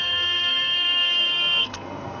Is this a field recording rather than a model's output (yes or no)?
no